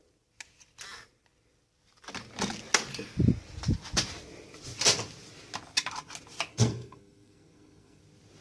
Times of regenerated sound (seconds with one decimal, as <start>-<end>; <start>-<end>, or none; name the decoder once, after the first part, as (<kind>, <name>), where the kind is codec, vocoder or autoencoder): 6.5-8.0 (codec, SNAC)